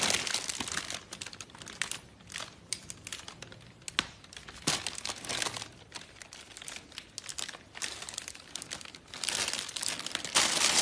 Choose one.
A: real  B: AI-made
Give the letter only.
A